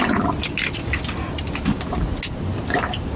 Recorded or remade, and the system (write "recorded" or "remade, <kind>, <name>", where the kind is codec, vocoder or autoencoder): recorded